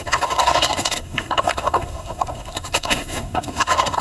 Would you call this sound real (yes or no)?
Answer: no